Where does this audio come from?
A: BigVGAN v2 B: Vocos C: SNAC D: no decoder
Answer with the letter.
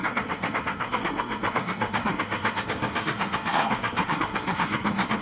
C